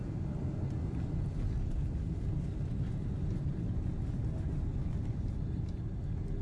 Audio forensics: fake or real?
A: real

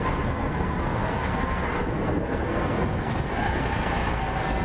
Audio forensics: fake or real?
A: fake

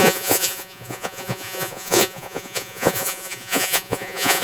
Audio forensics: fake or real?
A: fake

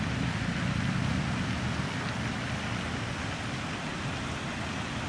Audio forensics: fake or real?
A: real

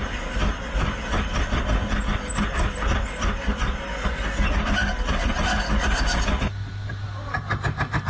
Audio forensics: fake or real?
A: real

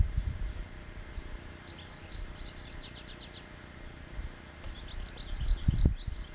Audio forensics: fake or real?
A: real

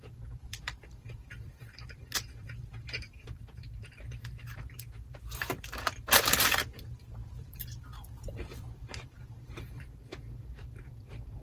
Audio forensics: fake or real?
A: fake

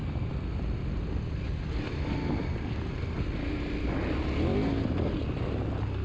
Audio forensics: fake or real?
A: real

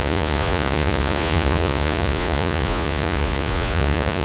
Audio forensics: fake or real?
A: fake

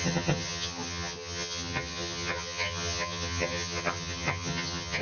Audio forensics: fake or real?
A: fake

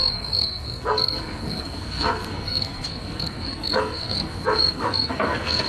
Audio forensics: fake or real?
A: fake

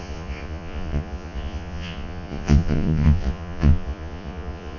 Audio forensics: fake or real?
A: fake